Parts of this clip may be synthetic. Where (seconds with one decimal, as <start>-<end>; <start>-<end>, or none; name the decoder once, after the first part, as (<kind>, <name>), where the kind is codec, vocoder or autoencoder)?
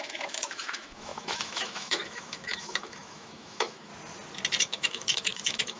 0.0-3.9 (autoencoder, DAC-VAE); 4.6-5.8